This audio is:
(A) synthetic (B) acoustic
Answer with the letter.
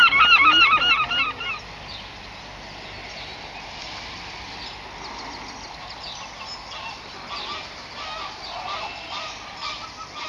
B